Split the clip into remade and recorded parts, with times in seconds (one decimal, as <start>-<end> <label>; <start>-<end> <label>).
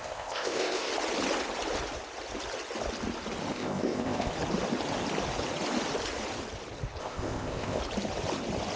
0.0-0.9 remade; 0.9-3.5 recorded; 3.5-4.3 remade; 4.3-7.0 recorded; 7.0-7.8 remade; 7.8-8.8 recorded